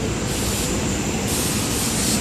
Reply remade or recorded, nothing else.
recorded